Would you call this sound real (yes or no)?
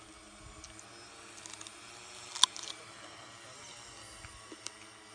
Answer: yes